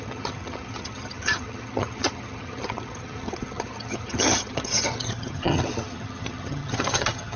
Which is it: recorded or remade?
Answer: remade